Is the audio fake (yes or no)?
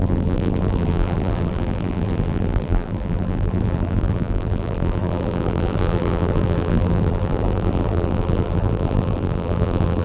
yes